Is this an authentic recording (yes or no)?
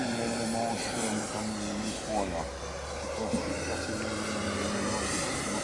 yes